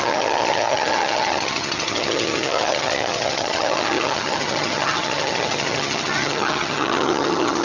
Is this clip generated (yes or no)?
yes